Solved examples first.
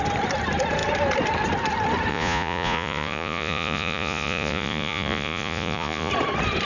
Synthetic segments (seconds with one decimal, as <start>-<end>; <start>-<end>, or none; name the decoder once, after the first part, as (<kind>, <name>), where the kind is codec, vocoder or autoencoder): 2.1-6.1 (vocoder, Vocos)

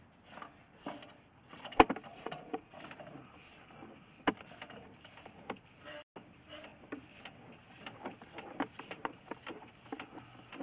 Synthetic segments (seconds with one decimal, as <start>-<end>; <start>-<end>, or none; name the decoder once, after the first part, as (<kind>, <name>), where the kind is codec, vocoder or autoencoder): 2.1-2.7 (vocoder, Vocos)

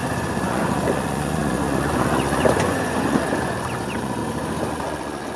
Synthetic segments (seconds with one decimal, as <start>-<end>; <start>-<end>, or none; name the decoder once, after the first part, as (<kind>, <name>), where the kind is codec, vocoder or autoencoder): 0.0-4.2 (vocoder, Vocos); 4.7-5.4

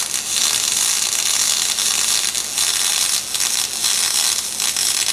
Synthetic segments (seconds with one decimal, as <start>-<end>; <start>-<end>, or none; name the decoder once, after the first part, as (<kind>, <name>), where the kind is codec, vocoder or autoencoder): none